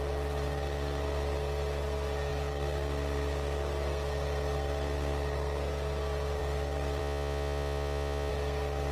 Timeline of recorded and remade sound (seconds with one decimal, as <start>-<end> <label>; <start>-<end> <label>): 0.0-7.0 remade; 7.0-8.3 recorded; 8.3-8.9 remade